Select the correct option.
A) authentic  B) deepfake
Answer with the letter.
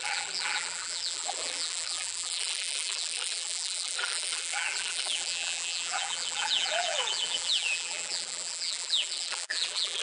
B